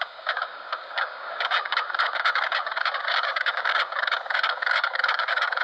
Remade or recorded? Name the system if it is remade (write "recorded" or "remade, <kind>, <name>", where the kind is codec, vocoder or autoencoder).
remade, codec, DAC